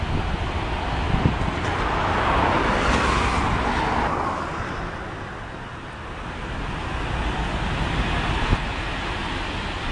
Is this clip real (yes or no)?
yes